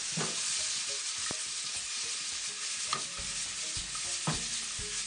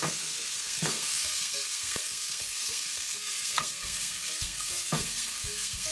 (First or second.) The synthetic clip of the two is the second